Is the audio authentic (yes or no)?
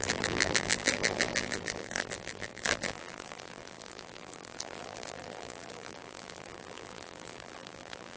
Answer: no